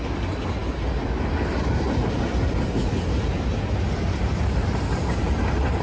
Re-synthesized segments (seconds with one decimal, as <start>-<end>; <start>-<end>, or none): none